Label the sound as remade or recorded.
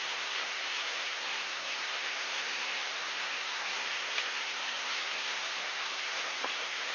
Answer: remade